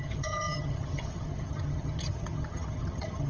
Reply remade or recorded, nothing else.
remade